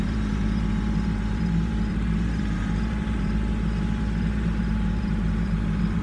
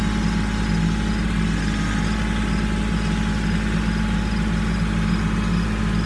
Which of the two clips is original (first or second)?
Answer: second